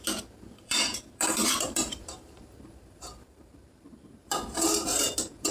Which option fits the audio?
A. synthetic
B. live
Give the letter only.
A